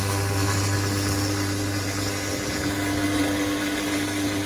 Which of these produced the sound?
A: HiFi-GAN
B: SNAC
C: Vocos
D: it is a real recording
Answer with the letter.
D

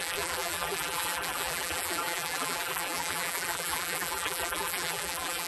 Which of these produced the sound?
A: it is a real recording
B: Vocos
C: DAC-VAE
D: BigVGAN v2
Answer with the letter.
D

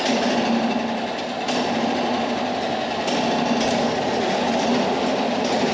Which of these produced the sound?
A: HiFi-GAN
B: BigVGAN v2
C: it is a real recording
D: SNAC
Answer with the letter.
C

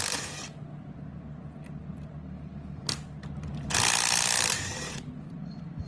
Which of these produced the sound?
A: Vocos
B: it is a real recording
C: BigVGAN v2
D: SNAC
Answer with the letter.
B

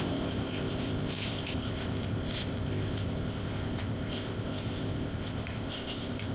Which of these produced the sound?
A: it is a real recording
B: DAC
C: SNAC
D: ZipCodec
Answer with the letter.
D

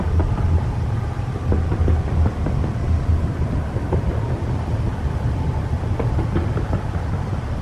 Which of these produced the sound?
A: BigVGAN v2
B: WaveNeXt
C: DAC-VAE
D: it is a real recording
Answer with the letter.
D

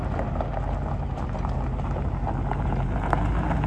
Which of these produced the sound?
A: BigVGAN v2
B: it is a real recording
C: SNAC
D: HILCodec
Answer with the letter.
B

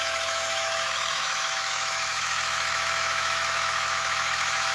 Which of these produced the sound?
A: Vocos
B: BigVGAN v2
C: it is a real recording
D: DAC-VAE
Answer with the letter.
D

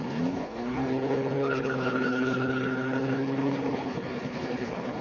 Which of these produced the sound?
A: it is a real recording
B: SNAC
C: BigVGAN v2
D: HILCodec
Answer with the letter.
D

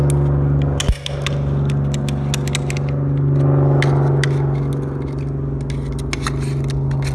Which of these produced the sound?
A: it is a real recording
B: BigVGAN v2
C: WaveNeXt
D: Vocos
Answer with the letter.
A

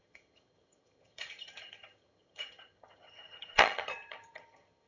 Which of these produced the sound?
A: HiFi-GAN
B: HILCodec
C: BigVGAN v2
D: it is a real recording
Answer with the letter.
A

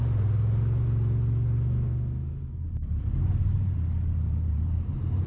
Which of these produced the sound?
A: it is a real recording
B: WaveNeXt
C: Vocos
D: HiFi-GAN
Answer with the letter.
A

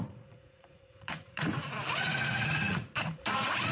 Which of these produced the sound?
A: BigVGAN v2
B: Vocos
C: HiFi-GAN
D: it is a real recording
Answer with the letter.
B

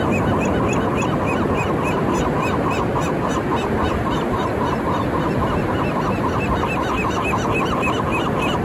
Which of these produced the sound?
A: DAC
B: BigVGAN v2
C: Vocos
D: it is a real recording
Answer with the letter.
D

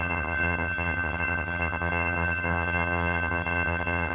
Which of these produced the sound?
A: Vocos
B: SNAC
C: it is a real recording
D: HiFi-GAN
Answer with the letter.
D